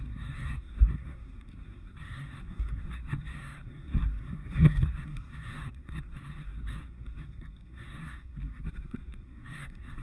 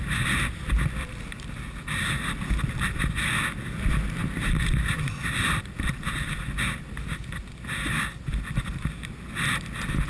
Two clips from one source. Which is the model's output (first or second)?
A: first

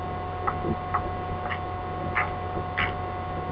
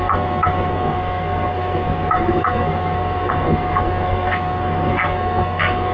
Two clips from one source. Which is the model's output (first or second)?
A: second